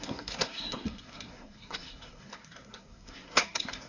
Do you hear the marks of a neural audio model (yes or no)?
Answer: yes